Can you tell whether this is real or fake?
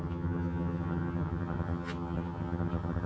fake